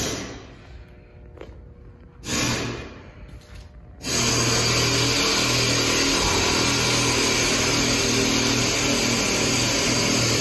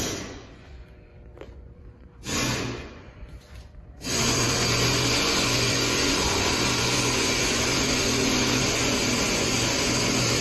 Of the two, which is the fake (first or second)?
second